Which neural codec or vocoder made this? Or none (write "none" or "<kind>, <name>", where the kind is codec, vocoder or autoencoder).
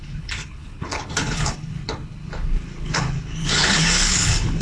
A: codec, HILCodec